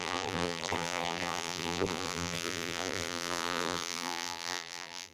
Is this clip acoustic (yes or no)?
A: no